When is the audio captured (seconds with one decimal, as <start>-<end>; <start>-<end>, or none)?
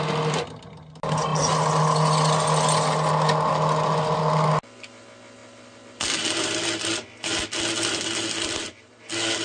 0.0-9.4